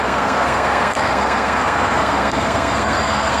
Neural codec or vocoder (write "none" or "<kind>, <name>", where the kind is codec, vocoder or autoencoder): codec, SNAC